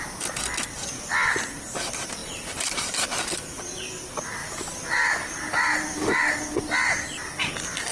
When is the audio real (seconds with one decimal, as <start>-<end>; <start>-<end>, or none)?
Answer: 0.0-2.2; 3.6-4.4; 6.4-7.9